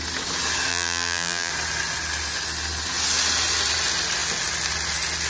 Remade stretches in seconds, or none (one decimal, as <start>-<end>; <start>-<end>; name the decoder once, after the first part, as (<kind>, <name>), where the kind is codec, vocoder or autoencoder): 0.7-1.5 (vocoder, BigVGAN v2)